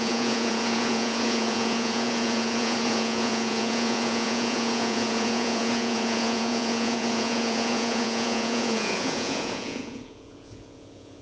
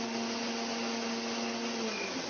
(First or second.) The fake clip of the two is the first